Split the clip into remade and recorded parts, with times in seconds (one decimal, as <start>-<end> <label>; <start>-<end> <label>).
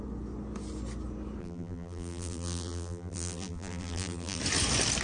0.0-1.4 recorded; 1.4-4.4 remade; 4.4-5.0 recorded